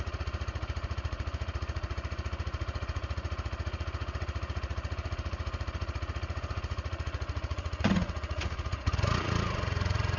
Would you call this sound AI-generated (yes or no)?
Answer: yes